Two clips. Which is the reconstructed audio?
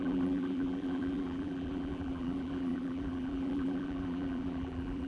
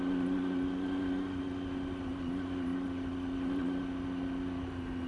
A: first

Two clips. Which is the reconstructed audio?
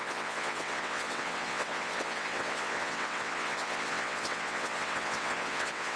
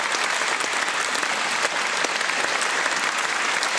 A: first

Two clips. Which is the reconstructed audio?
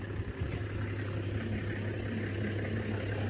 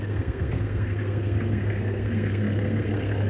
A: second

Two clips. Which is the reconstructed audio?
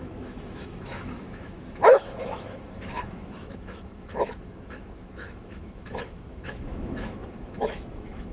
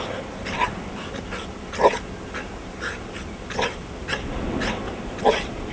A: first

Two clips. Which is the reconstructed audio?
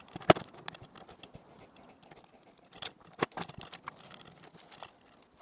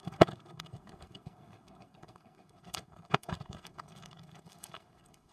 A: second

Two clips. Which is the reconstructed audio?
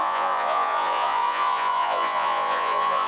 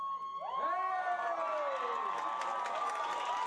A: first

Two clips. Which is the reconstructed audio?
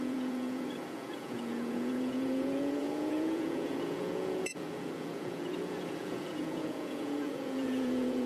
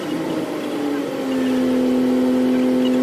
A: first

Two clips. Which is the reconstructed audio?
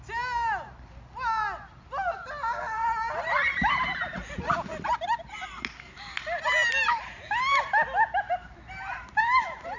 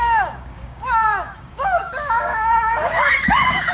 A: second